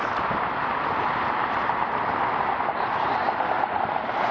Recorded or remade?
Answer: recorded